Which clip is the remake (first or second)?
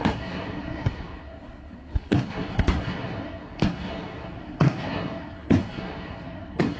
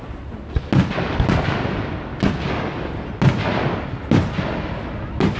first